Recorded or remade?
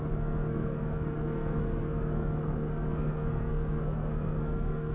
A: remade